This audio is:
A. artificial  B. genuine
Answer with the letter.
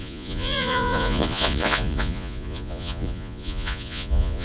A